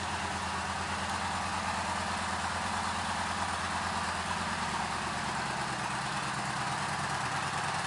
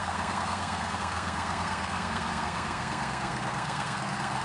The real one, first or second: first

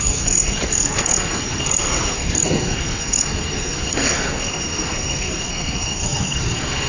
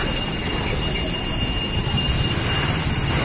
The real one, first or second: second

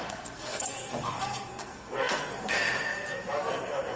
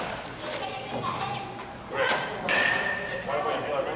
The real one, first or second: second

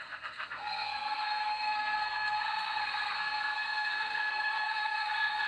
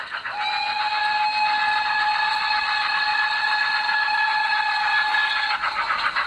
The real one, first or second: second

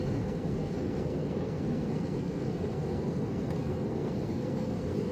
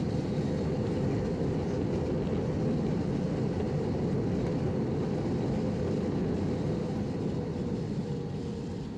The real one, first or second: second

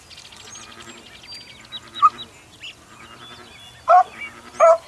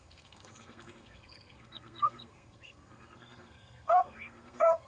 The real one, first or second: first